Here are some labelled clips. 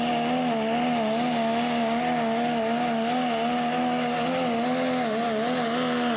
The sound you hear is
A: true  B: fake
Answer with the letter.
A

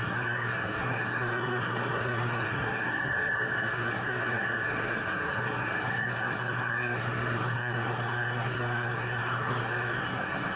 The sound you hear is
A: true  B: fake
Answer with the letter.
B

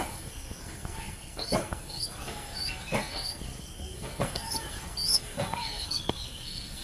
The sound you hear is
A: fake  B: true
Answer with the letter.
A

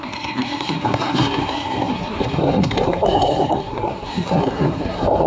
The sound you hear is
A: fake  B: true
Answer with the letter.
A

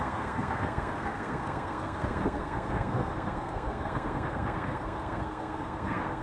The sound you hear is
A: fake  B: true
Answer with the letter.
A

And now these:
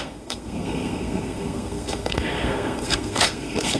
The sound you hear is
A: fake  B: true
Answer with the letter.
A